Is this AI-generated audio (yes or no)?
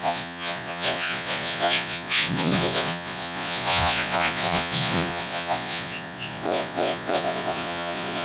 yes